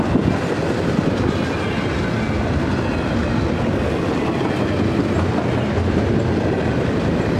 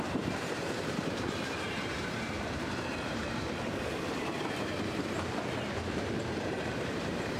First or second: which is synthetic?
second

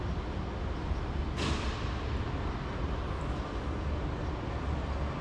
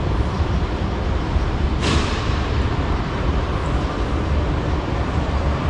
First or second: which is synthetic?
second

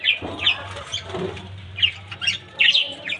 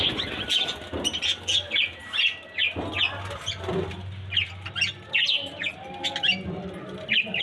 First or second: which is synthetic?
first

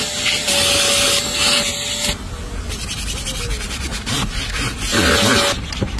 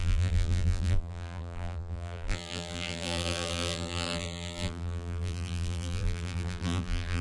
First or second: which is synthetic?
second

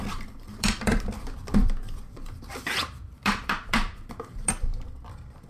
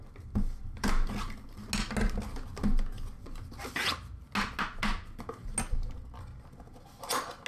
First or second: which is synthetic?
first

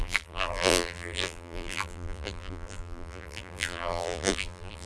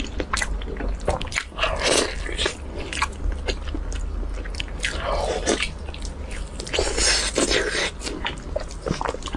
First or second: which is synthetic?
first